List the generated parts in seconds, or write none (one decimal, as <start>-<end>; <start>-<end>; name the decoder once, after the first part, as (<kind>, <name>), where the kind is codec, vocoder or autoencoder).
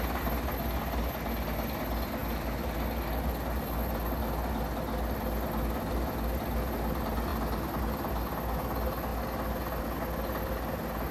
none